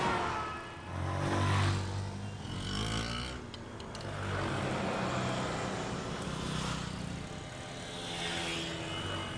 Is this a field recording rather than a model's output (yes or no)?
yes